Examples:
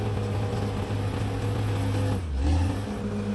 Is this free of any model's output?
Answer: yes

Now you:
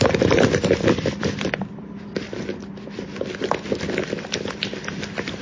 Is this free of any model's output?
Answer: no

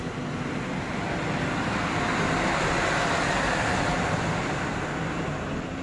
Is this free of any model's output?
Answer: yes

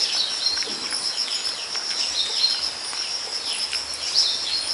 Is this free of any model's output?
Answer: yes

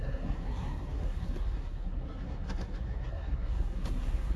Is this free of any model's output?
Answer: no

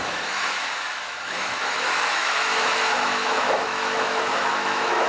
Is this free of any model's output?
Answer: no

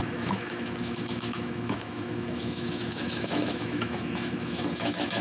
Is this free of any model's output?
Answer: no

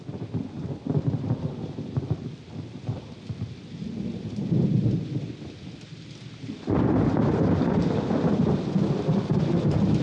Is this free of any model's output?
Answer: yes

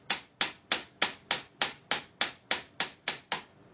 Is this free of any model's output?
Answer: yes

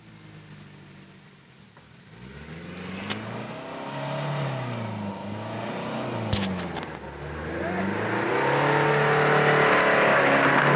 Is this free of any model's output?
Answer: yes